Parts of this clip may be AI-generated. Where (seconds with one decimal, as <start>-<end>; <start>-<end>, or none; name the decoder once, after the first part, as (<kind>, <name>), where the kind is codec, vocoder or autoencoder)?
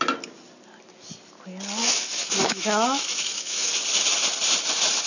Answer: 1.8-3.7 (autoencoder, DAC-VAE)